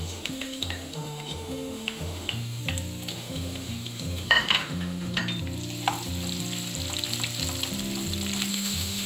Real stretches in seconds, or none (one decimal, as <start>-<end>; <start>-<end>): 2.6-3.1; 5.2-8.5